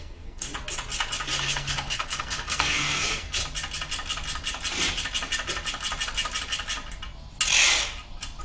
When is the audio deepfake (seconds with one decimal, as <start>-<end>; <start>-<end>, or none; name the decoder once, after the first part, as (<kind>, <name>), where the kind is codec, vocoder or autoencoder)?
0.0-0.5 (codec, SNAC); 1.4-3.4